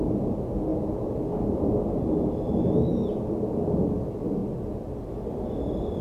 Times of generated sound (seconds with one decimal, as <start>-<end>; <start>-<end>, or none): none